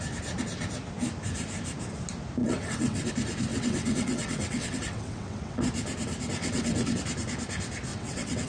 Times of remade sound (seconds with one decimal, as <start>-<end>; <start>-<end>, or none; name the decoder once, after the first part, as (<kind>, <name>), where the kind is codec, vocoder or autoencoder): 2.4-3.1 (vocoder, WaveNeXt); 3.5-5.6; 6.4-7.0; 7.9-8.5